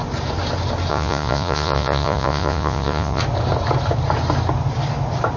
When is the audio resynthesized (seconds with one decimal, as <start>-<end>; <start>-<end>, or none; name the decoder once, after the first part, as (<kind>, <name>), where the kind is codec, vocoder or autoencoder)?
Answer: 0.9-3.2 (vocoder, Vocos)